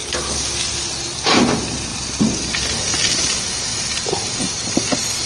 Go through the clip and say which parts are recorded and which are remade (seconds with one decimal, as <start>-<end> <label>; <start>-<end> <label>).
0.0-3.7 recorded; 3.7-4.4 remade; 4.4-5.3 recorded